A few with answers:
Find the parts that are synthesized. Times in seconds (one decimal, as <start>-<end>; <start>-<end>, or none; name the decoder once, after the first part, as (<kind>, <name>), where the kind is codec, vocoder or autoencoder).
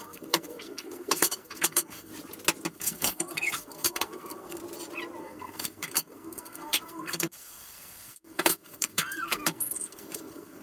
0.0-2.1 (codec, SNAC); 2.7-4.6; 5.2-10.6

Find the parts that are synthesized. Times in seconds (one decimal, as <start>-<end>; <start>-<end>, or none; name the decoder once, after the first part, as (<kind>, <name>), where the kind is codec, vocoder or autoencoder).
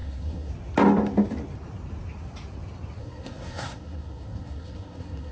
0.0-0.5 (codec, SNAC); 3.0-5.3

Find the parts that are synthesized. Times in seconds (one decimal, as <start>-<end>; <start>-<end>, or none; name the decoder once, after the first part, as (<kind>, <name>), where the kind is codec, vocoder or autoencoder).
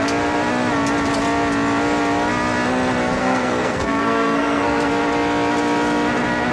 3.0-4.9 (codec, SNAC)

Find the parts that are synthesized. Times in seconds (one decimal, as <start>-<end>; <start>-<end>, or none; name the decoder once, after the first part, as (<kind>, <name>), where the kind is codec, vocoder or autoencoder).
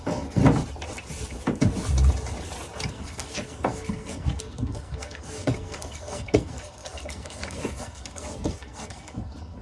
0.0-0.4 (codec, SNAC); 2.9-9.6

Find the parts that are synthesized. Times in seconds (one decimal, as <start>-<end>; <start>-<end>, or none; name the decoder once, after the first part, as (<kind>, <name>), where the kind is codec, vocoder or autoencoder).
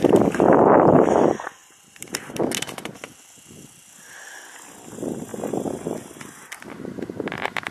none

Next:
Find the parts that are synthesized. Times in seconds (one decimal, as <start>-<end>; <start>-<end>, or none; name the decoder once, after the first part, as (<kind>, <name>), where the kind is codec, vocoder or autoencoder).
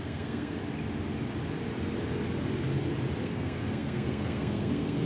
0.0-0.6 (codec, SNAC); 3.2-5.1